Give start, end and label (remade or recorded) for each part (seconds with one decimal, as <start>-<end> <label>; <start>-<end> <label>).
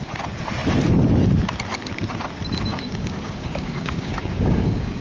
0.0-2.7 recorded; 2.7-5.0 remade